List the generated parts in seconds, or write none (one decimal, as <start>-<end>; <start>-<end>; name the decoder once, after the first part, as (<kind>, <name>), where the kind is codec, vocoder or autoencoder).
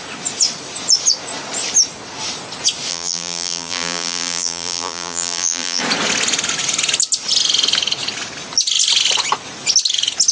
2.9-5.8 (vocoder, BigVGAN v2)